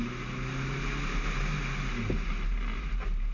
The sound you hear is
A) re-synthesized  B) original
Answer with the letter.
B